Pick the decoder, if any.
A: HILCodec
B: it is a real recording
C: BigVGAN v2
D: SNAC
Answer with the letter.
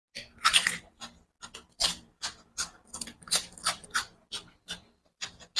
B